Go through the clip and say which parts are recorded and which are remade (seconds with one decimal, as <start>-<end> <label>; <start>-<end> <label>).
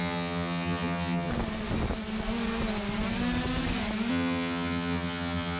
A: 0.0-1.3 remade; 1.3-4.1 recorded; 4.1-5.6 remade